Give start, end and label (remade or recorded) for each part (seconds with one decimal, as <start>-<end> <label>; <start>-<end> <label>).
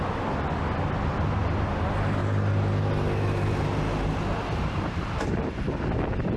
0.0-6.4 recorded